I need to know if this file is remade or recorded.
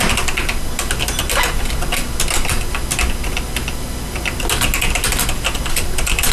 recorded